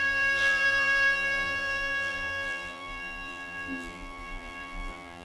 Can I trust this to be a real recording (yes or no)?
no